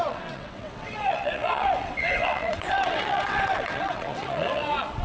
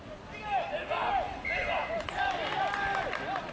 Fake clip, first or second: first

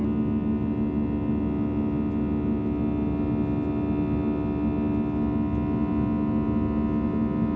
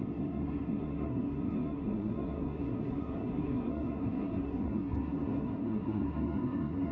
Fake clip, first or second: second